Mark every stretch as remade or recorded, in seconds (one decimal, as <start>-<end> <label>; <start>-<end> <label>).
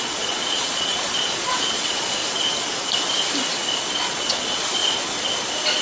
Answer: 0.0-2.2 remade; 2.2-4.0 recorded; 4.0-4.8 remade; 4.8-5.8 recorded